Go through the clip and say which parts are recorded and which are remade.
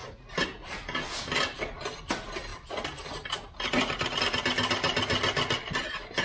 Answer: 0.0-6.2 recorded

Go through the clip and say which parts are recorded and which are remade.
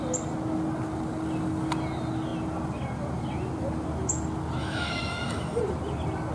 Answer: 0.0-4.6 recorded; 4.6-5.6 remade; 5.6-6.3 recorded